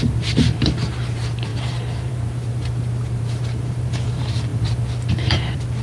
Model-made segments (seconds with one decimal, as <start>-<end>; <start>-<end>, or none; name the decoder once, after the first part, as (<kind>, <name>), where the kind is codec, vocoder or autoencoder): 0.0-4.5 (vocoder, BigVGAN v2); 5.1-5.8

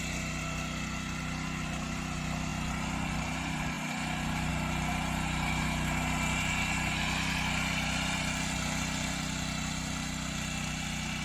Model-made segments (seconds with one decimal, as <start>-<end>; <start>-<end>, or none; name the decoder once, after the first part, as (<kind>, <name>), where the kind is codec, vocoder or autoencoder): none

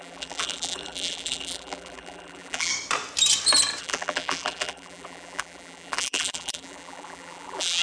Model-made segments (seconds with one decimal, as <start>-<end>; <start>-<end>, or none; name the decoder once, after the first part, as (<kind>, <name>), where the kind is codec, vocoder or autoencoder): 0.0-2.7 (vocoder, BigVGAN v2); 3.8-7.8

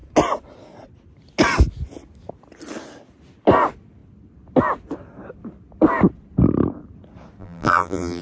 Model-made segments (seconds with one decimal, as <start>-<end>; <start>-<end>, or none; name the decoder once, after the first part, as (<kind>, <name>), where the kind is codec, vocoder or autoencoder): 7.4-8.2 (vocoder, BigVGAN v2)

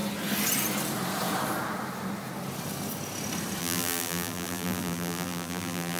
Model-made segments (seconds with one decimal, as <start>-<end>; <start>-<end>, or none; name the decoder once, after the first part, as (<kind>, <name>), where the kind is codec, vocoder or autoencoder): 3.6-6.0 (vocoder, BigVGAN v2)

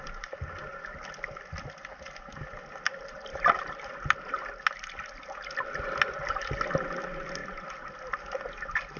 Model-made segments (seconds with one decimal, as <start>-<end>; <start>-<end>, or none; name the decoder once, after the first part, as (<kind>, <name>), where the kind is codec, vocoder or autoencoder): 3.3-3.9 (vocoder, BigVGAN v2)

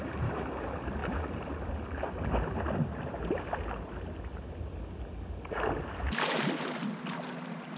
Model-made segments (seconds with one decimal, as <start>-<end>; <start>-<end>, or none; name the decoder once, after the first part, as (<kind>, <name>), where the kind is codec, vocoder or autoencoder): none